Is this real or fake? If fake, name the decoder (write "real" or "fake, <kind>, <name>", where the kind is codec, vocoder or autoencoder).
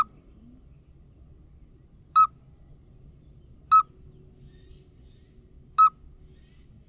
real